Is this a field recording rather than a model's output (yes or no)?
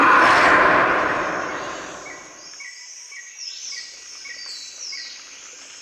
no